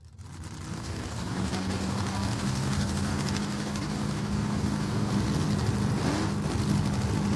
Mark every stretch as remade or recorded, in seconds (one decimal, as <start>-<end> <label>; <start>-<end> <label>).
0.0-0.7 recorded; 0.7-5.1 remade; 5.1-7.4 recorded